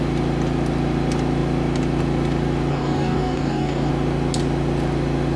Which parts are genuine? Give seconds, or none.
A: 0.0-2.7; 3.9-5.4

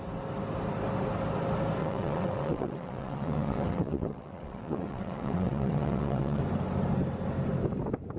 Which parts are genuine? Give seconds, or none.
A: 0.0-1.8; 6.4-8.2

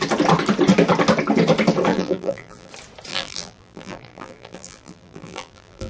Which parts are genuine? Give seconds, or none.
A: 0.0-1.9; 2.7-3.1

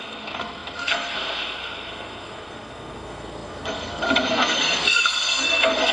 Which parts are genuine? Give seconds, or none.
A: none